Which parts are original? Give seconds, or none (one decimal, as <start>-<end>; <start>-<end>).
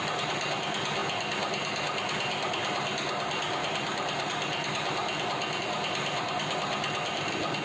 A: 0.0-7.6